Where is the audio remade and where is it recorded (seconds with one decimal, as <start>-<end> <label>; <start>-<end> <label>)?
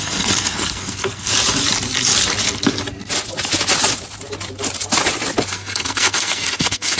0.0-1.3 remade; 1.3-5.5 recorded; 5.5-7.0 remade